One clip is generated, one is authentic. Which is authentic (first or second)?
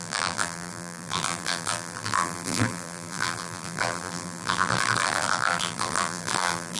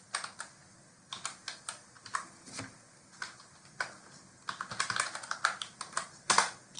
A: second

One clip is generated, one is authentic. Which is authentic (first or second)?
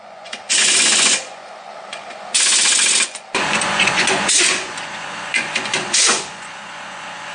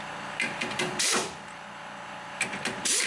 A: second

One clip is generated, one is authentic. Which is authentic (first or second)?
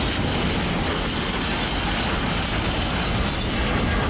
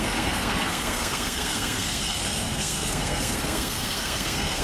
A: first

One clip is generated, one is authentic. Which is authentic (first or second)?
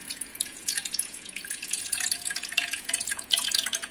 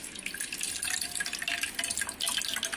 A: second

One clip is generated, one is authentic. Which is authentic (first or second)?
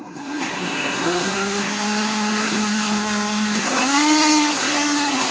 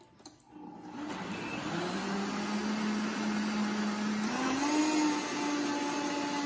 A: second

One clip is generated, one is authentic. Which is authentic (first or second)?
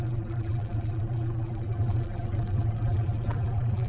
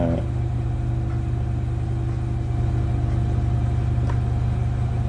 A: second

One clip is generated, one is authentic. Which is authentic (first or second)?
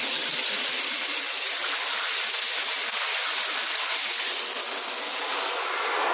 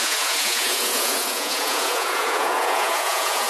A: first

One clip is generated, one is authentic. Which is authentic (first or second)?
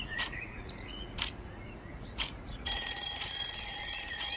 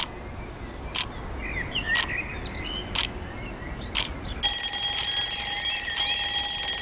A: second